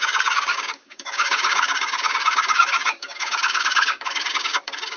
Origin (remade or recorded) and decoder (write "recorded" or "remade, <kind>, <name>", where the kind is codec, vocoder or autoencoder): remade, codec, DAC